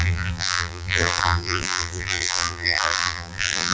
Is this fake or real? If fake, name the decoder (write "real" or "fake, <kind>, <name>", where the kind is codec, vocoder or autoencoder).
fake, vocoder, BigVGAN v2